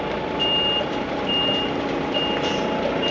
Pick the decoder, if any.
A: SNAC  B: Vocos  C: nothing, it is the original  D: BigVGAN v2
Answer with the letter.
C